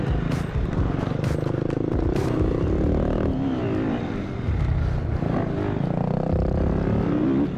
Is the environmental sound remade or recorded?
recorded